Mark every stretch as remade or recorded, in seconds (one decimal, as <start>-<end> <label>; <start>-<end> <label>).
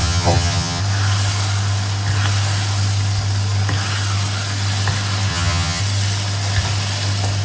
0.0-0.8 remade; 0.8-5.3 recorded; 5.3-5.8 remade; 5.8-7.4 recorded